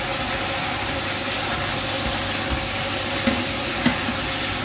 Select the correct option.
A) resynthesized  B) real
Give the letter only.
B